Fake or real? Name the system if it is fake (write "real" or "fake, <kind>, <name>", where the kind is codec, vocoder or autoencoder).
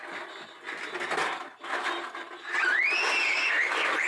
real